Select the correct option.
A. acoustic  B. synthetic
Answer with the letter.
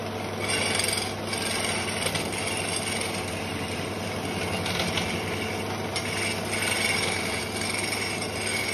A